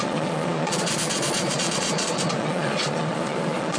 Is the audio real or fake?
fake